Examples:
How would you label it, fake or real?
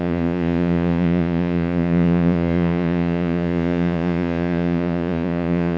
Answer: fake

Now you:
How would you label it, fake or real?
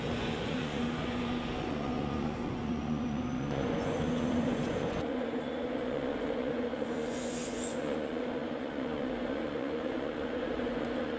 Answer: fake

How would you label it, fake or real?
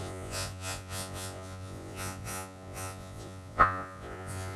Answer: fake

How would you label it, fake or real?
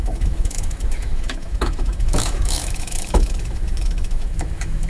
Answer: fake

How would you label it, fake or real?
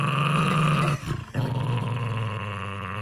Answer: real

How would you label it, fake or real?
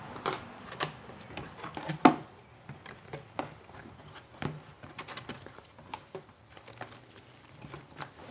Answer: real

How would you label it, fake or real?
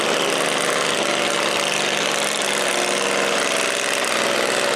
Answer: real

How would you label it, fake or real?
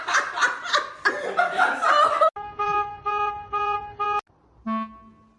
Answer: real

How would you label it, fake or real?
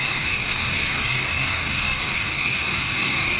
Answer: fake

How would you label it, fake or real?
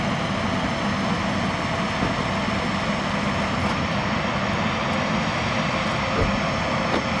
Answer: real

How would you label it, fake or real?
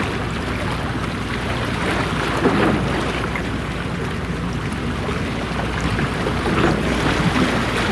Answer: real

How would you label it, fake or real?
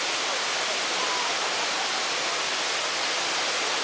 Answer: real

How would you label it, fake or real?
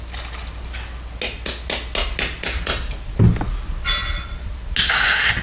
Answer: real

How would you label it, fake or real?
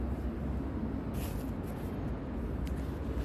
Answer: real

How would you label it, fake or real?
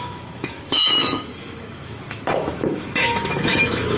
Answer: fake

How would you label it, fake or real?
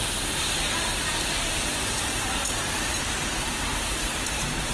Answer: fake